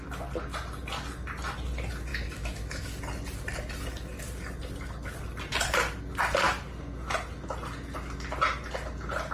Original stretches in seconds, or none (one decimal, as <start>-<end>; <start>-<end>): 0.0-2.1; 3.0-9.3